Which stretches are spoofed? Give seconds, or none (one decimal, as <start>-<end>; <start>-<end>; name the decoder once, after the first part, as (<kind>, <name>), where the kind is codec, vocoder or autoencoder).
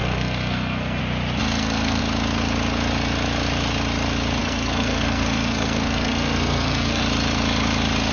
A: 0.0-1.0 (codec, SNAC); 1.4-2.0; 4.4-7.0